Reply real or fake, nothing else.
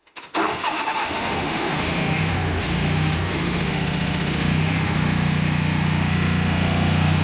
fake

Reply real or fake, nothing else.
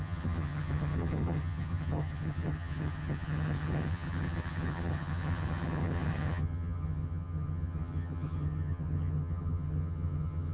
fake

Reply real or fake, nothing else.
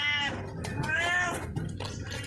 real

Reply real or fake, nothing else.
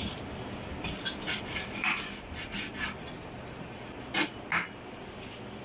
real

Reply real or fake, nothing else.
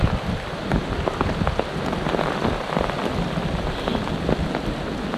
real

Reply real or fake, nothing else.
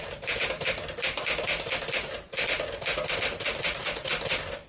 real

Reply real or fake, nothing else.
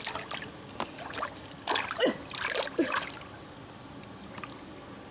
real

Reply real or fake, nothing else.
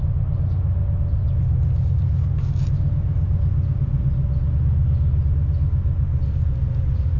real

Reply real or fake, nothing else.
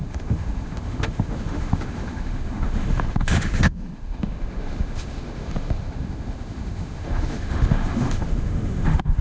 fake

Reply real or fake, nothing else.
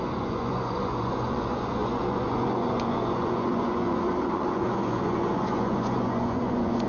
fake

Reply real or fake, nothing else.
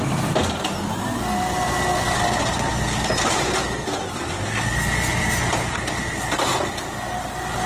real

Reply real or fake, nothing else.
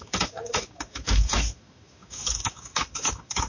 fake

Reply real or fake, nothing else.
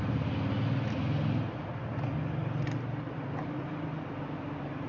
real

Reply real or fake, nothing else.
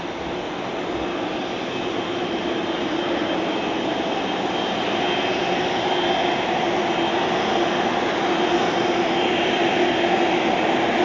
real